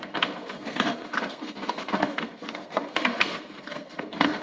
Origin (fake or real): fake